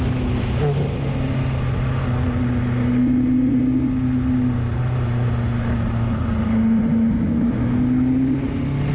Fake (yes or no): no